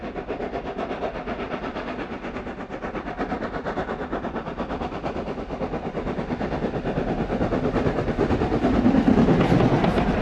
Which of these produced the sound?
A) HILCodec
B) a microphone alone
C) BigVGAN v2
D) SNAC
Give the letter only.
B